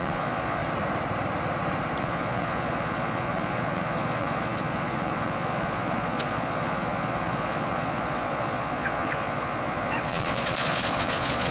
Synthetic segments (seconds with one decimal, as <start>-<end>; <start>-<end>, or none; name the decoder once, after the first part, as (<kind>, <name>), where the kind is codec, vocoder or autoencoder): 0.0-0.6 (vocoder, Vocos); 2.0-11.5